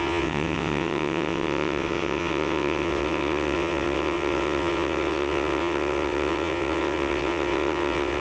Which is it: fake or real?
fake